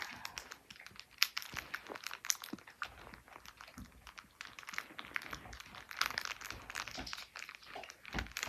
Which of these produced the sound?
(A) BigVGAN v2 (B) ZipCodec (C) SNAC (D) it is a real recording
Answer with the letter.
D